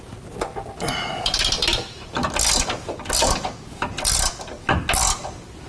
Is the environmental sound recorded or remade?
recorded